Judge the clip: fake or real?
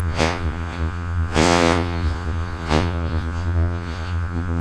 fake